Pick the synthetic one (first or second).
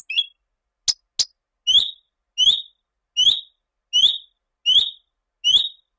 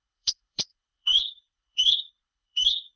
second